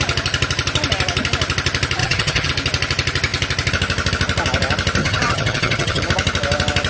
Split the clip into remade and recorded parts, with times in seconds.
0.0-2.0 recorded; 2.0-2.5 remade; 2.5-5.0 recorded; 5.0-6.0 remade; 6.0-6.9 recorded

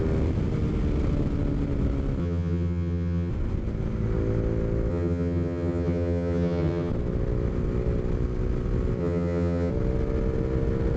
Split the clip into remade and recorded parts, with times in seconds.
0.0-2.2 recorded; 2.2-3.3 remade; 3.3-4.9 recorded; 4.9-6.9 remade; 6.9-9.0 recorded; 9.0-9.7 remade; 9.7-11.0 recorded

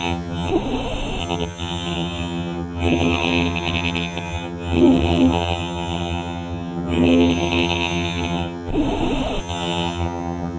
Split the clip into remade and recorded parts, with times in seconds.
0.0-0.5 remade; 0.5-1.2 recorded; 1.2-8.7 remade; 8.7-9.4 recorded; 9.4-10.6 remade

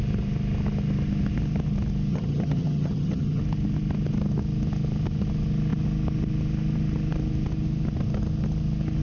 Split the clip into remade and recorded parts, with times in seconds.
0.0-2.1 recorded; 2.1-3.4 remade; 3.4-9.0 recorded

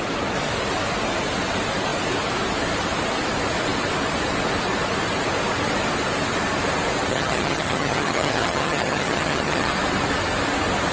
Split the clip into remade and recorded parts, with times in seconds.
0.0-7.1 recorded; 7.1-9.7 remade; 9.7-10.9 recorded

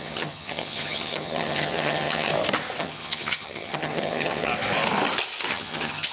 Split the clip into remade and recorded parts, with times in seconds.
0.0-2.3 remade; 2.3-2.8 recorded; 2.8-4.5 remade; 4.5-5.5 recorded; 5.5-6.1 remade

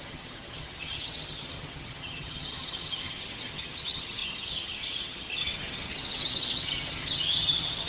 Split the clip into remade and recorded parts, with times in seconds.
0.0-7.9 remade

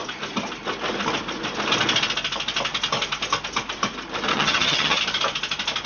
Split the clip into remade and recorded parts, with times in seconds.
0.0-4.3 recorded; 4.3-5.0 remade; 5.0-5.9 recorded